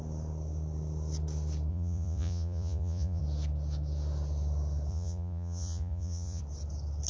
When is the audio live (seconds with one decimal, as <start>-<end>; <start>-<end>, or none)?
0.0-1.7; 3.2-4.9; 6.4-7.1